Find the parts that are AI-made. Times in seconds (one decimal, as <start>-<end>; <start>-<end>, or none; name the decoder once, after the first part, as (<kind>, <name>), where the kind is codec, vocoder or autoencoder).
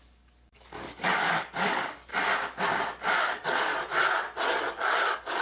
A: 0.0-2.1 (codec, DAC); 3.1-3.7; 4.7-5.4